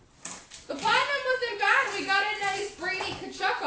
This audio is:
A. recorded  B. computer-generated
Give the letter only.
A